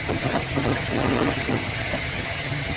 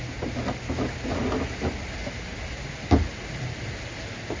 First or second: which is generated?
first